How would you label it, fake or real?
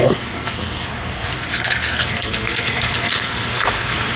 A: fake